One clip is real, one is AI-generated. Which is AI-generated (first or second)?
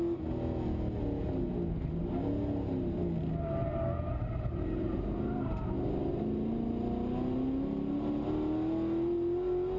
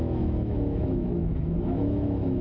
second